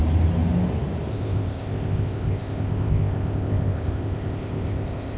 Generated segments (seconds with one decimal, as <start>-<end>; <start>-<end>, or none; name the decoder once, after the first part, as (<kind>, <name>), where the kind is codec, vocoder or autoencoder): 1.1-5.2 (codec, ZipCodec)